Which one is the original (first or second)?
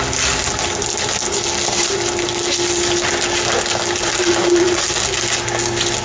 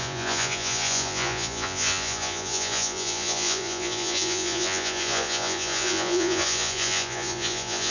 first